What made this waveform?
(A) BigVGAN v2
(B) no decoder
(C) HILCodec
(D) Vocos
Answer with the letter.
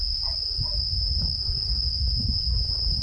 B